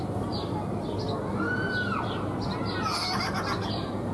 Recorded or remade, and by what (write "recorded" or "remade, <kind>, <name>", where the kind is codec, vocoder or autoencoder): recorded